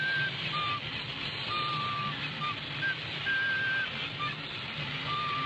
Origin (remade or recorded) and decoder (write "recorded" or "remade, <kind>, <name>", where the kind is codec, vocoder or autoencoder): recorded